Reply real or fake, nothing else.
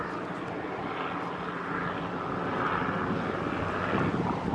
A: real